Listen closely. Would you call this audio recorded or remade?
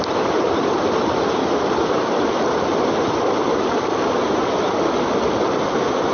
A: recorded